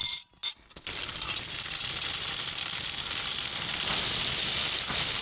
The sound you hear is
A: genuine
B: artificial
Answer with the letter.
A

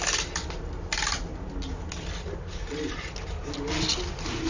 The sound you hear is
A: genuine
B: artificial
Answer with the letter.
A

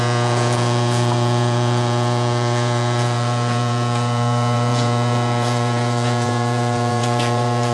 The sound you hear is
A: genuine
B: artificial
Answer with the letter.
B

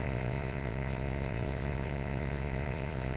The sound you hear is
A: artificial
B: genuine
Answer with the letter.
A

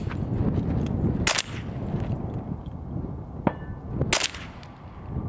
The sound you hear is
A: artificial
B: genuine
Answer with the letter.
B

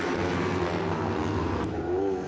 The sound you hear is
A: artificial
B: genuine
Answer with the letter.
A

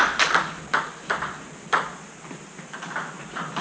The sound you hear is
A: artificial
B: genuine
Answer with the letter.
B